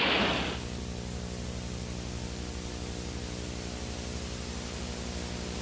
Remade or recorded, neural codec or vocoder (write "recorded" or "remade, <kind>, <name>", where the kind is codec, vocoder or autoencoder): recorded